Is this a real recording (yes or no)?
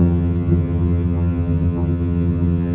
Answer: no